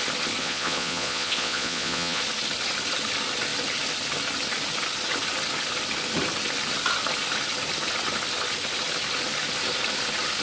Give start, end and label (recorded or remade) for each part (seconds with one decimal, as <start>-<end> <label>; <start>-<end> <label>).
0.0-0.4 recorded; 0.4-2.2 remade; 2.2-10.4 recorded